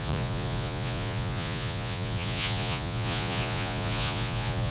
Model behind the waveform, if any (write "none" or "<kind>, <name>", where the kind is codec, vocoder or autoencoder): vocoder, Vocos